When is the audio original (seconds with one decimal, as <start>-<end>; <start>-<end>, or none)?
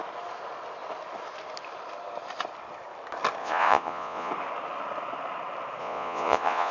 0.0-3.4; 4.3-5.8